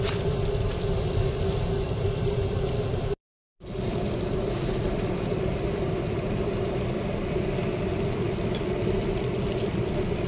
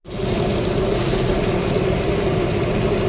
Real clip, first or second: second